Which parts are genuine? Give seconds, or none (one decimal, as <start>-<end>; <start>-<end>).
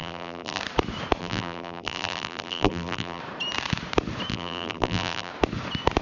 0.6-1.2; 3.2-4.3; 5.3-6.0